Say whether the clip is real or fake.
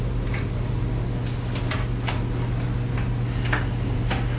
real